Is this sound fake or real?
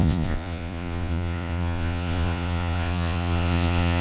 fake